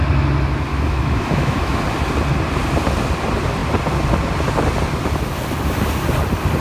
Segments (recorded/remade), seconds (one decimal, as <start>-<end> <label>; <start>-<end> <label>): 0.0-0.7 recorded; 0.7-1.8 remade; 1.8-6.6 recorded